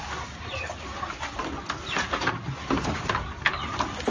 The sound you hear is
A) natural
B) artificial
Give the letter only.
A